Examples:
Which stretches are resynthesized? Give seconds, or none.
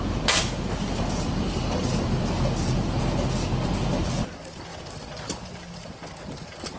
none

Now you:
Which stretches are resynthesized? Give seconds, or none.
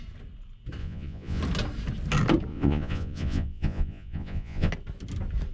0.8-1.4 (vocoder, Vocos); 2.5-4.7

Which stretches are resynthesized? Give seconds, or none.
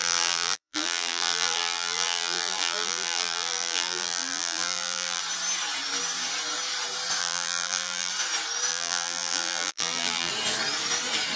0.0-5.2 (vocoder, BigVGAN v2); 7.2-8.1; 8.7-10.3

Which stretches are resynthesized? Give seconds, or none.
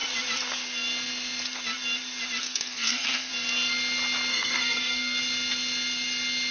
2.4-3.3 (codec, SNAC); 4.3-5.2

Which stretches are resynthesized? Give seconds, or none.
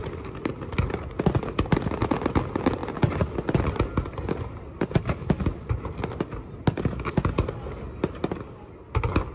none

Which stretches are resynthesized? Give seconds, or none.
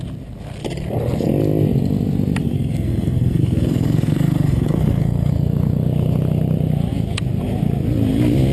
2.4-5.3 (codec, SNAC)